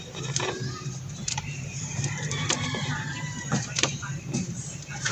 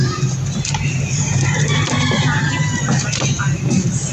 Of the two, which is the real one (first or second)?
second